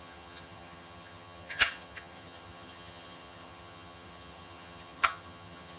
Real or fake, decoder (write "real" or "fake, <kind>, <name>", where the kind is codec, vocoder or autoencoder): fake, vocoder, HiFi-GAN